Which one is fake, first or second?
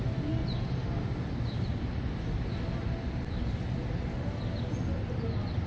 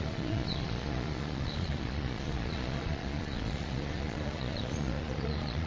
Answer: second